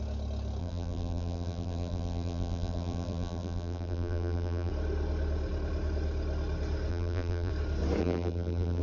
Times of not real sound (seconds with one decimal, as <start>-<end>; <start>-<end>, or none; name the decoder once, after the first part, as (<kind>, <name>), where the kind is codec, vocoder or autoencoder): 0.6-4.7 (vocoder, BigVGAN v2); 6.9-7.5; 8.0-8.8